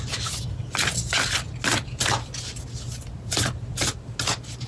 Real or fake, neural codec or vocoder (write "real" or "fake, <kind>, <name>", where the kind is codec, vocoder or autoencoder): real